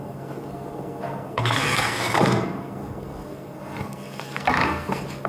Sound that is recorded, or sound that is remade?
remade